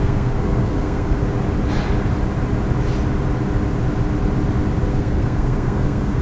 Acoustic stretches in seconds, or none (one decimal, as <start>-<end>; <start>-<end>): 1.2-4.9